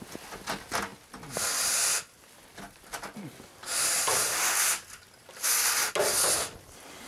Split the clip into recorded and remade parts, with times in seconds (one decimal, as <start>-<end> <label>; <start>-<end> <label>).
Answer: 0.0-7.1 recorded